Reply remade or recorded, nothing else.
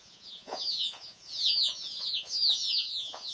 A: remade